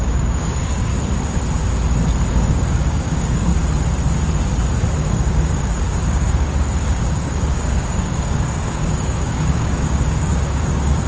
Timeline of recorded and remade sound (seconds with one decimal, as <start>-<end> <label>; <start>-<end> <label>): 0.0-0.9 remade; 0.9-2.3 recorded; 2.3-3.5 remade; 3.5-5.0 recorded; 5.0-11.1 remade

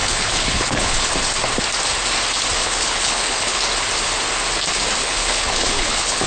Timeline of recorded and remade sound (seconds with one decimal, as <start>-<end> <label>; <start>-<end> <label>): 0.0-1.1 remade; 1.1-2.6 recorded; 2.6-3.6 remade; 3.6-5.0 recorded; 5.0-6.3 remade

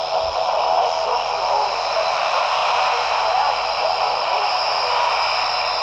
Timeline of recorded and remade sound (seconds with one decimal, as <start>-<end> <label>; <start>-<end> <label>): 0.0-2.6 recorded; 2.6-3.7 remade; 3.7-5.8 recorded

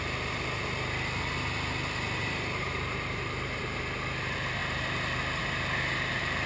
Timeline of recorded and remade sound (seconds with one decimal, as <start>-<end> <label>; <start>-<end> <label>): 0.0-2.2 recorded; 2.2-3.6 remade; 3.6-6.5 recorded

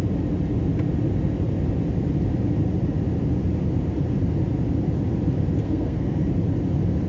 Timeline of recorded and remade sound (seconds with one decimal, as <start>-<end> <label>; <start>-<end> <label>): 0.0-5.6 recorded; 5.6-6.3 remade; 6.3-7.1 recorded

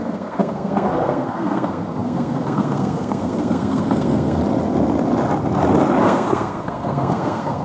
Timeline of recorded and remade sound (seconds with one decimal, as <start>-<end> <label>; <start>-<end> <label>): 0.0-4.4 remade; 4.4-6.0 recorded; 6.0-7.6 remade

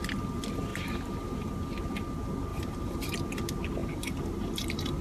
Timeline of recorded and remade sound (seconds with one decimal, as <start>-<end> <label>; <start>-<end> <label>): 0.0-0.7 recorded; 0.7-1.5 remade; 1.5-2.5 recorded; 2.5-3.1 remade; 3.1-3.8 recorded; 3.8-5.0 remade